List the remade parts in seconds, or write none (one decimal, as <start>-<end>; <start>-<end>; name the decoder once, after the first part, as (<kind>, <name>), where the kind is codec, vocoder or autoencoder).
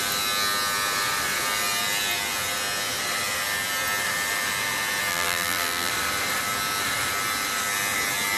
5.1-5.9 (vocoder, BigVGAN v2)